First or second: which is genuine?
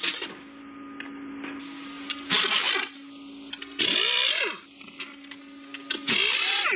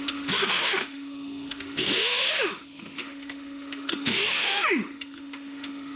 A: first